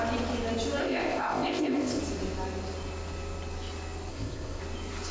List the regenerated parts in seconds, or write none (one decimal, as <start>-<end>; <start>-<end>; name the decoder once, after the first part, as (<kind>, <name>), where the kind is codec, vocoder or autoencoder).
0.8-2.0 (codec, ZipCodec); 4.1-4.6